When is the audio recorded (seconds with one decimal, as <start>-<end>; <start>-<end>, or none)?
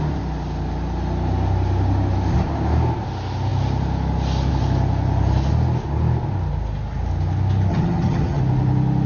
0.0-7.7; 8.4-9.1